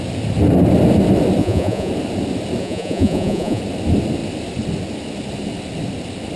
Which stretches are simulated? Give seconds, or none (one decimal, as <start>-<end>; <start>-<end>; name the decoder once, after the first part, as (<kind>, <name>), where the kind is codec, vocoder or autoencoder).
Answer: 1.4-1.9 (vocoder, Vocos); 2.6-3.6